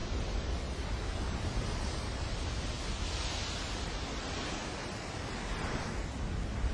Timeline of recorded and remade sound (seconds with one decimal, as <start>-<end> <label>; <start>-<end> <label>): 0.0-6.7 recorded